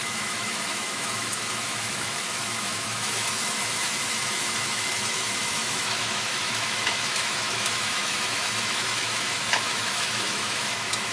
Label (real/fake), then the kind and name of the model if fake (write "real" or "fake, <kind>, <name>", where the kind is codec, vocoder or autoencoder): fake, autoencoder, DAC-VAE